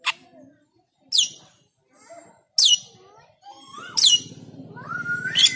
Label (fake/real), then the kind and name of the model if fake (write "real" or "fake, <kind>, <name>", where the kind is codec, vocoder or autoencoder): real